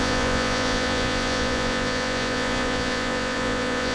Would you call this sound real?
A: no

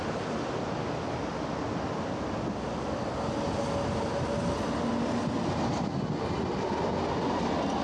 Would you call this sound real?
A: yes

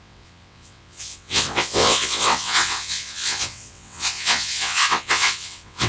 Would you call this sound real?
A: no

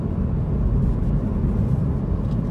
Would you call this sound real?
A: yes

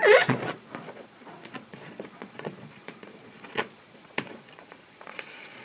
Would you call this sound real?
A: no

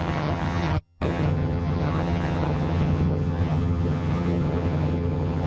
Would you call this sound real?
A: no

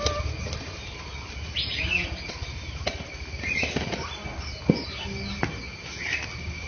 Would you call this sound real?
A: yes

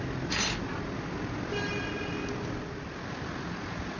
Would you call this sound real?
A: yes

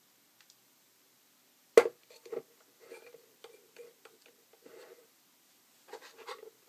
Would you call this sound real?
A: yes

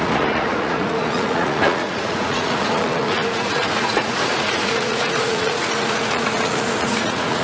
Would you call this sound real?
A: no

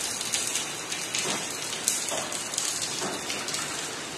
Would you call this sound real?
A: yes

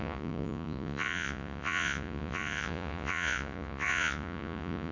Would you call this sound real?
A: no